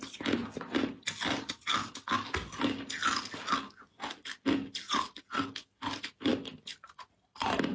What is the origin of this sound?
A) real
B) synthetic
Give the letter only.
A